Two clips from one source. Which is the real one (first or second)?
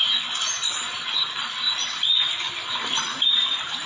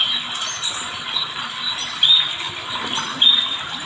first